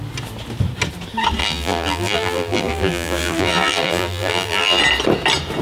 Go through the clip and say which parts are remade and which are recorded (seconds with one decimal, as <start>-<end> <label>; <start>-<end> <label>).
0.0-1.4 recorded; 1.4-4.8 remade; 4.8-5.6 recorded